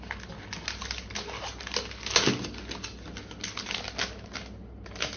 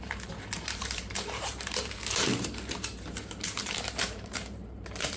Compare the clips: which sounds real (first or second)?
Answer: first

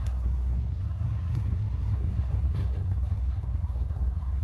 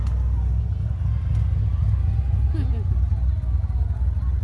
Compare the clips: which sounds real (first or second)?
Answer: second